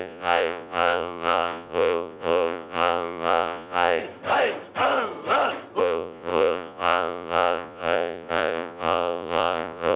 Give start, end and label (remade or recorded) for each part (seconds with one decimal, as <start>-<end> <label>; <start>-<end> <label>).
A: 0.0-4.0 remade; 4.0-5.8 recorded; 5.8-10.0 remade